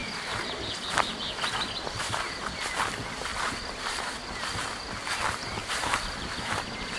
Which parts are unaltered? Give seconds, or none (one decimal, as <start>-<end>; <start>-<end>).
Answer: 0.0-3.3; 4.2-5.6; 6.6-7.0